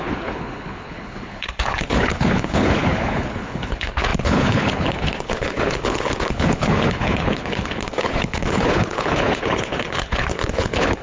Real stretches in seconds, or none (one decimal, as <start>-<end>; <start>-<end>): none